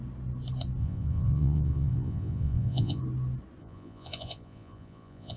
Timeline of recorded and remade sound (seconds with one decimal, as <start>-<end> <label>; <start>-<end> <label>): 0.0-0.8 recorded; 0.8-3.0 remade; 3.0-3.6 recorded; 3.6-5.4 remade